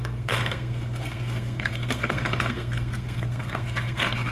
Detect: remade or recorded remade